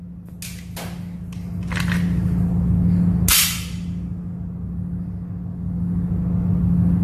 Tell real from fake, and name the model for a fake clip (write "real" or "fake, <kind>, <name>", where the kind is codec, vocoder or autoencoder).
real